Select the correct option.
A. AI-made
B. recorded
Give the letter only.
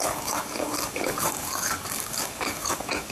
A